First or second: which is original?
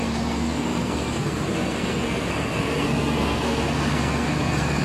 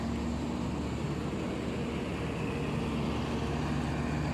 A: second